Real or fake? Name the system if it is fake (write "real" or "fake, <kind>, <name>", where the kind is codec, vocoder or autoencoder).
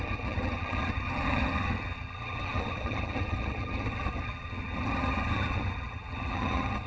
fake, vocoder, HiFi-GAN